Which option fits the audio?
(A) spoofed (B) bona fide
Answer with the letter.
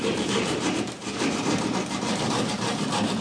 A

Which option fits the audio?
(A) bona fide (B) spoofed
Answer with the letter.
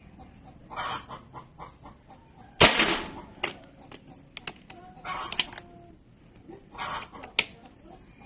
A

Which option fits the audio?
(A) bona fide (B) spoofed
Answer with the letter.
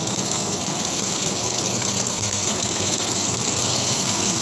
B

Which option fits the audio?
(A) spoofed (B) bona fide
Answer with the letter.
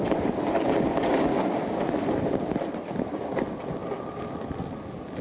B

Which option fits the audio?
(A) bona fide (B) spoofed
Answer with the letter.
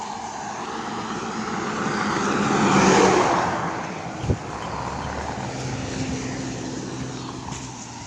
A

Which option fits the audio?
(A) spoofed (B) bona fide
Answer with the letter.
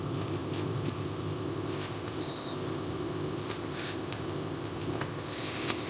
A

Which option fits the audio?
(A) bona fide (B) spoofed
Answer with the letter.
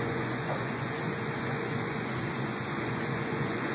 B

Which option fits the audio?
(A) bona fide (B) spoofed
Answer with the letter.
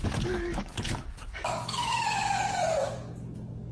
B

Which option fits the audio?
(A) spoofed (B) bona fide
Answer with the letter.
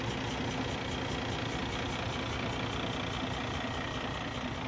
B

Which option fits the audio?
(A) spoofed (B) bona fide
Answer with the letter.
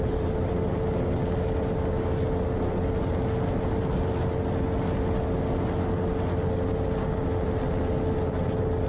B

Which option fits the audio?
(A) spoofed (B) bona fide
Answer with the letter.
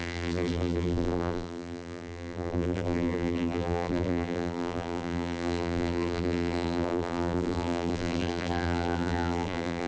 A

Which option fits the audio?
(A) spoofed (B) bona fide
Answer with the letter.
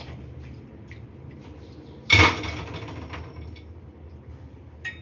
B